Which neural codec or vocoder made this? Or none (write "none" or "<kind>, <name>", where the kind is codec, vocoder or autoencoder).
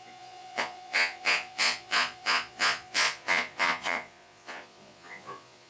vocoder, Vocos